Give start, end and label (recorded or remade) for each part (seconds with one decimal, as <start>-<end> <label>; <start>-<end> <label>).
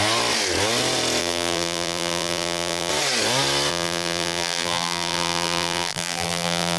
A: 0.0-1.2 recorded; 1.2-2.9 remade; 2.9-3.7 recorded; 3.7-6.8 remade